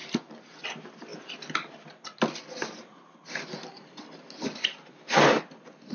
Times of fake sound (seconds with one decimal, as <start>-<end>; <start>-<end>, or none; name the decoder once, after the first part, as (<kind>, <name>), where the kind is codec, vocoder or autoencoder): none

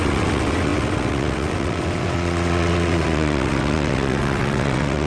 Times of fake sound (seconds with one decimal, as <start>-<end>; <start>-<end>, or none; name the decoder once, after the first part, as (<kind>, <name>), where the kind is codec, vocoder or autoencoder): 0.0-5.1 (vocoder, WaveNeXt)

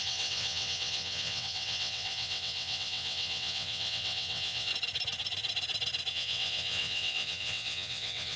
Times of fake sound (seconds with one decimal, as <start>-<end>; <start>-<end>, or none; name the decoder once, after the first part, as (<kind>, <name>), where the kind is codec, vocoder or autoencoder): 0.0-4.7 (vocoder, WaveNeXt); 6.1-8.4

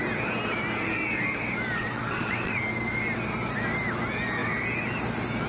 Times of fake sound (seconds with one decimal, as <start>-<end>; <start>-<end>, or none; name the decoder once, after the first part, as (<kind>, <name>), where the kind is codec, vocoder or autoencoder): 1.8-2.6 (vocoder, WaveNeXt)

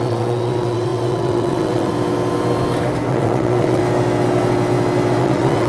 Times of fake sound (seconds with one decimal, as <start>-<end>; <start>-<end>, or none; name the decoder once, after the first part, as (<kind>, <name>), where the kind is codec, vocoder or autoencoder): 0.0-1.9 (vocoder, WaveNeXt); 3.1-3.8; 5.2-5.7

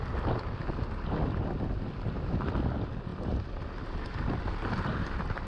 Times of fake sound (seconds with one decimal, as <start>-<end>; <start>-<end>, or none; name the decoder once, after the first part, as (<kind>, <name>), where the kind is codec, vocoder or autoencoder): none

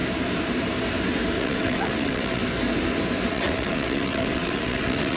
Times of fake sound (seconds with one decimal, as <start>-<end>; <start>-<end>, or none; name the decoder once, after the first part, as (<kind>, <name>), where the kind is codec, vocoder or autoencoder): 1.4-2.4 (vocoder, WaveNeXt); 3.3-5.2

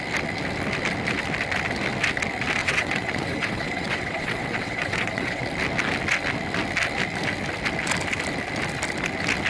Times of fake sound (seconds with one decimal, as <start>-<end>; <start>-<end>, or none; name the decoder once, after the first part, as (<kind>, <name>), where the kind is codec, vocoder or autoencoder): 2.6-5.4 (vocoder, WaveNeXt)